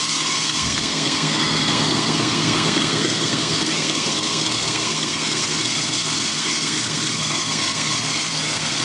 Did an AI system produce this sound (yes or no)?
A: yes